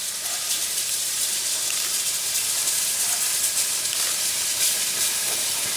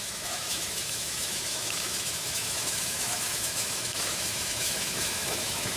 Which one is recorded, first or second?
first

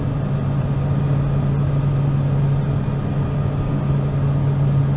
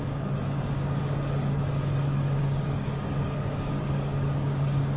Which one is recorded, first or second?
first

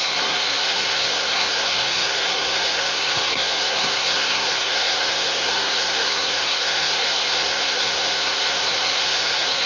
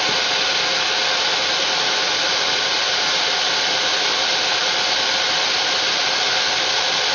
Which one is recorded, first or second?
second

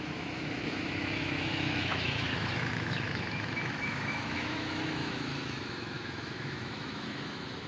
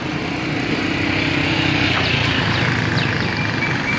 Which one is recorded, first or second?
second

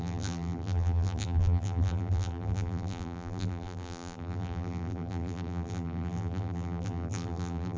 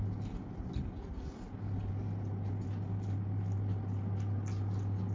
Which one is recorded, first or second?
second